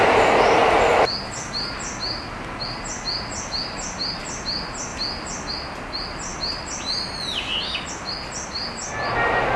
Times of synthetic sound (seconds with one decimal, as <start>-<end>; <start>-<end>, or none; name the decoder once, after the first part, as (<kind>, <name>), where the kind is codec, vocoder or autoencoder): none